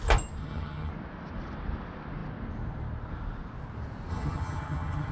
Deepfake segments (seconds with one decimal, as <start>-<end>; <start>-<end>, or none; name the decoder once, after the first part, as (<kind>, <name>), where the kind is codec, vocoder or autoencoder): 0.4-0.9 (vocoder, HiFi-GAN); 4.1-5.1

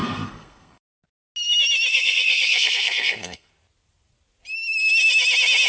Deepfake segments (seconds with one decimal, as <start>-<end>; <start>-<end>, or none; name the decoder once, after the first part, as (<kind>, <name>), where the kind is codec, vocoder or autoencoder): 0.0-0.8 (codec, SNAC); 1.9-3.5

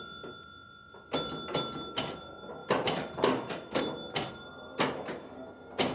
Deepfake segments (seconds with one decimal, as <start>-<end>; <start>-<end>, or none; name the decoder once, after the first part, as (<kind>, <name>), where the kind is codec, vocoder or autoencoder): 2.6-3.8 (vocoder, BigVGAN v2)